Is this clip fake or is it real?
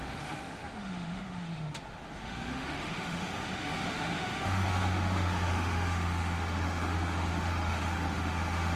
fake